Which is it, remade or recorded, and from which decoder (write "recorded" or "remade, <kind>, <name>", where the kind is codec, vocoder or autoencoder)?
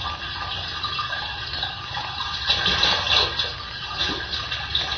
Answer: recorded